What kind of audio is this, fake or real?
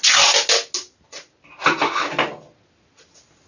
real